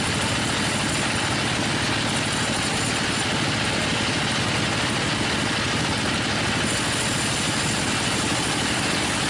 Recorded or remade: recorded